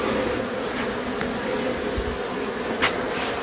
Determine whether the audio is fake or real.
real